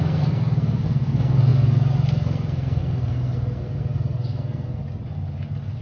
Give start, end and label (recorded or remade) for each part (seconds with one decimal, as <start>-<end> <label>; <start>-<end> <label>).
0.0-4.8 remade; 4.8-5.8 recorded